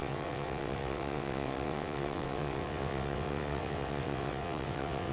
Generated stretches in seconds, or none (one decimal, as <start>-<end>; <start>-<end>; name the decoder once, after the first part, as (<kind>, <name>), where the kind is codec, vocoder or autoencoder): 0.0-5.1 (vocoder, WaveNeXt)